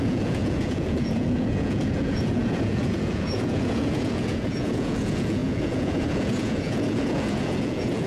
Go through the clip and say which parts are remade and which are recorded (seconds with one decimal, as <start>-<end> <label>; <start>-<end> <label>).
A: 0.0-8.1 remade